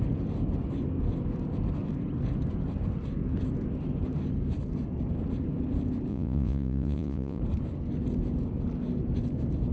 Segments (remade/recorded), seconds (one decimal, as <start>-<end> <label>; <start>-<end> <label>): 0.0-6.1 recorded; 6.1-7.4 remade; 7.4-9.7 recorded